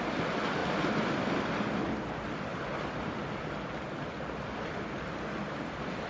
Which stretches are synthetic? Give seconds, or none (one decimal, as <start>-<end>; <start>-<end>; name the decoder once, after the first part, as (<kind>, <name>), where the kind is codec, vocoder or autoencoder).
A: none